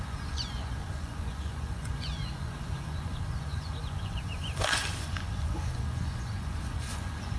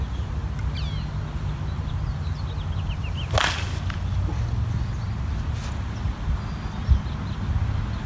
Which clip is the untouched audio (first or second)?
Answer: second